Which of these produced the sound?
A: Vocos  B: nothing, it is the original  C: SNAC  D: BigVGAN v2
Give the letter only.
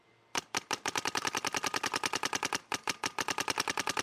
D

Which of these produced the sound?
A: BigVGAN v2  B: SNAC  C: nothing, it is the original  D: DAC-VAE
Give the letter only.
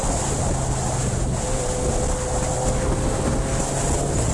C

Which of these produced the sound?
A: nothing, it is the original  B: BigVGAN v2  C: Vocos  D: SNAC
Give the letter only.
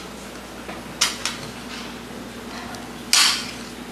A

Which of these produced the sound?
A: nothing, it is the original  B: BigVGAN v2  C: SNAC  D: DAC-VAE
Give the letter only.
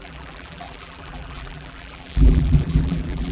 B